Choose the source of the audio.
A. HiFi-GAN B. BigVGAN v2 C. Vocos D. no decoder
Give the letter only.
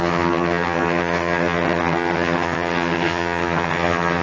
A